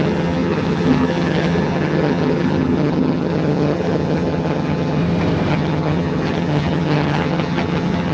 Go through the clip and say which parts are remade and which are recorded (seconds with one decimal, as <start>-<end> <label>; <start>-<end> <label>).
0.0-5.0 remade; 5.0-5.5 recorded; 5.5-8.1 remade